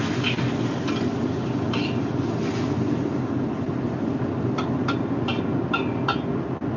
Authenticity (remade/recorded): recorded